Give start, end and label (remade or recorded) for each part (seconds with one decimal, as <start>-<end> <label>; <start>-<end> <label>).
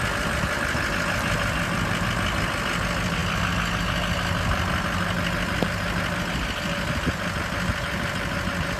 0.0-8.8 recorded